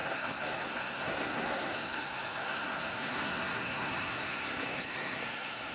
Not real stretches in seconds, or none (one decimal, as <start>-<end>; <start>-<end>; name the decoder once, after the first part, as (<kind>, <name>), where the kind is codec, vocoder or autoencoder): 0.0-5.7 (codec, SNAC)